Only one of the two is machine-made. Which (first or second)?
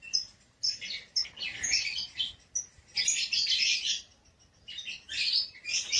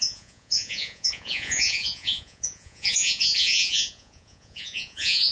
second